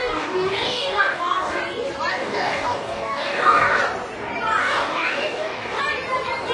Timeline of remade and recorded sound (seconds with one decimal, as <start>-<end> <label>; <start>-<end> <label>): 0.0-1.6 remade; 1.6-2.1 recorded; 2.1-3.8 remade; 3.8-4.6 recorded; 4.6-5.8 remade; 5.8-6.5 recorded